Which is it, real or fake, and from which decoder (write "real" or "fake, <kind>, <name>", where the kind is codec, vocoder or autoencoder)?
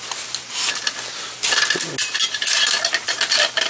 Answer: real